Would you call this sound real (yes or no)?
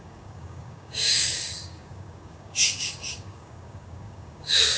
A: no